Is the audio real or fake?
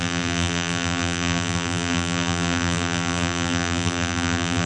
fake